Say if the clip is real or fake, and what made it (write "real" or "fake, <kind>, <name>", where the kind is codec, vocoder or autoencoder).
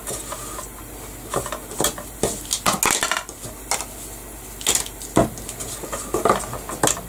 real